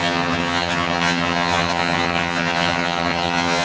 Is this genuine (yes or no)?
no